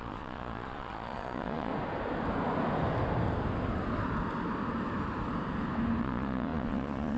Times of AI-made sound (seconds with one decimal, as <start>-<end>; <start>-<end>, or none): 0.0-1.7; 6.0-7.2